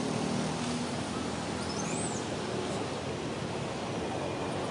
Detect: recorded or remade recorded